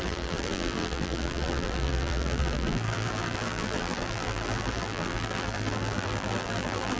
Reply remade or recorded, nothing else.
remade